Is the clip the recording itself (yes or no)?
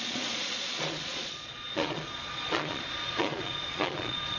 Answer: no